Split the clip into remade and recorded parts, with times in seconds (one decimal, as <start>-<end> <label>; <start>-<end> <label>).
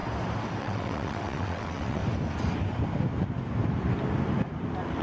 0.0-0.6 recorded; 0.6-2.0 remade; 2.0-5.0 recorded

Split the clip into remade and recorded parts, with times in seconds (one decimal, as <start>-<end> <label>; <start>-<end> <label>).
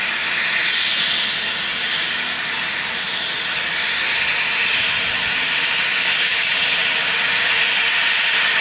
0.0-5.9 recorded; 5.9-6.5 remade; 6.5-8.6 recorded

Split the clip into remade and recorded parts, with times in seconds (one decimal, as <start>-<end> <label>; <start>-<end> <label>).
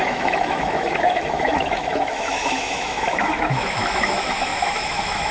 0.0-5.3 remade